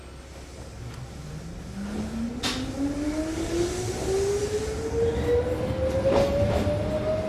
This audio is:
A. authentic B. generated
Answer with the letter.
A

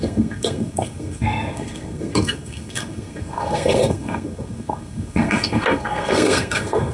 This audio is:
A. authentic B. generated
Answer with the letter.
B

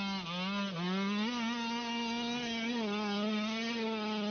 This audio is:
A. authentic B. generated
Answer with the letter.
A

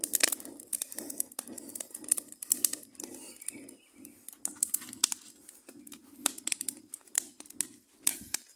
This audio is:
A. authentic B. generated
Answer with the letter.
A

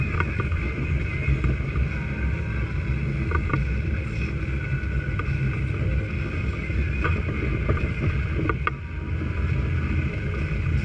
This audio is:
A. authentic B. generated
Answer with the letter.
A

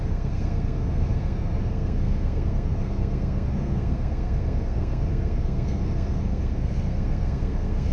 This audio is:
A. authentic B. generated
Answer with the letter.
B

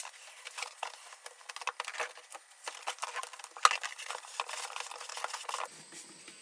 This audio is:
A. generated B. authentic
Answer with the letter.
B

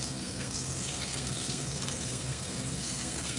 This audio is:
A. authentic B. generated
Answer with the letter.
B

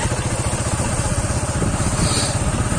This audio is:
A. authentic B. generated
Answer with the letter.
A